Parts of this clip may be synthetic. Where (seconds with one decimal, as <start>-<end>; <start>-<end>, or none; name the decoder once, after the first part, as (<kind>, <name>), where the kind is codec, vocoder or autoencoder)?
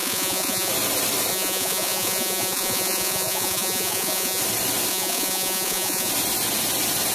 0.0-0.7 (vocoder, Vocos); 1.3-4.4; 4.9-6.1